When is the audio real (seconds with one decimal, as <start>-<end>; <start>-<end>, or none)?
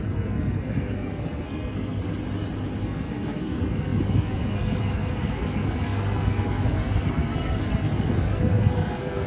2.0-2.8